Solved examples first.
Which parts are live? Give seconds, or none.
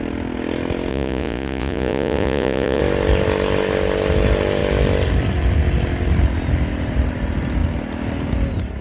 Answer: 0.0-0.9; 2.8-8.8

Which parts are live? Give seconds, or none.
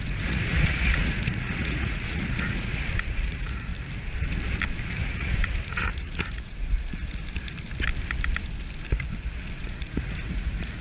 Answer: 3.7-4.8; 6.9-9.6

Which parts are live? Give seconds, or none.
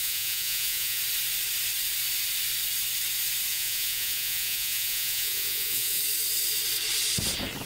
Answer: 1.0-3.5; 6.0-7.7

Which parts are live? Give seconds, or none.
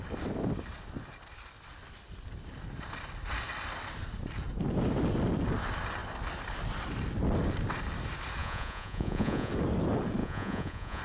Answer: 0.0-8.4; 9.5-10.2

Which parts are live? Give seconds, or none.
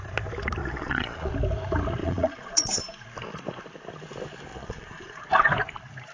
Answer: 0.0-0.6; 1.3-2.0; 2.8-4.5; 5.2-6.1